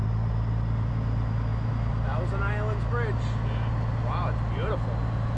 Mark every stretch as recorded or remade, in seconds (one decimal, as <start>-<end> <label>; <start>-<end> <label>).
0.0-5.4 recorded